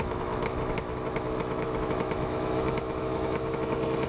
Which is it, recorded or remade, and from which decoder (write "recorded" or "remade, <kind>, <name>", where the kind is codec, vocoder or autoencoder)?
remade, autoencoder, DAC-VAE